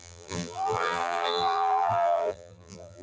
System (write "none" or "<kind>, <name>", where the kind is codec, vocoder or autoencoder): vocoder, BigVGAN v2